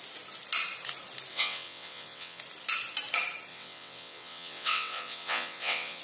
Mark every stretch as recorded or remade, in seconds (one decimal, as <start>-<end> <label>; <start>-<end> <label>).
0.0-1.3 recorded; 1.3-2.4 remade; 2.4-3.5 recorded; 3.5-6.0 remade